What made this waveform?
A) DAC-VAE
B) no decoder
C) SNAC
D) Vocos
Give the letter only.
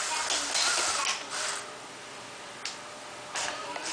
B